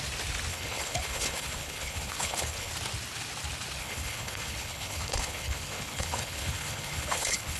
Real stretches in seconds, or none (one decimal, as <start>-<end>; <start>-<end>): 0.0-0.5; 2.7-3.8